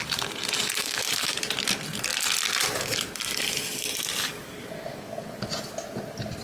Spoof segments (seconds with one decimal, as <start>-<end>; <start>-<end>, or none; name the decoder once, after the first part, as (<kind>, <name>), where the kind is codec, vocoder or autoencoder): 0.8-1.4 (codec, DAC); 4.2-5.5